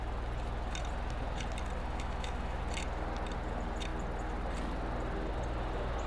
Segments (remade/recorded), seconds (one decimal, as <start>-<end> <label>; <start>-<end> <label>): 0.0-1.8 recorded; 1.8-2.6 remade; 2.6-6.1 recorded